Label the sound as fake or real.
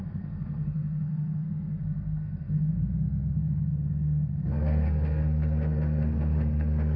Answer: fake